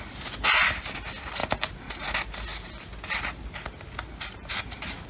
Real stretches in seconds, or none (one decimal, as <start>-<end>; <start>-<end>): 0.0-5.1